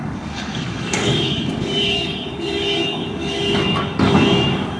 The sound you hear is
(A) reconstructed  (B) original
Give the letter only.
A